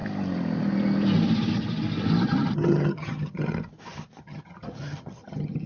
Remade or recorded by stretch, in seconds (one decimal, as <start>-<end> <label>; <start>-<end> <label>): 0.0-2.5 recorded; 2.5-3.5 remade; 3.5-4.2 recorded; 4.2-5.7 remade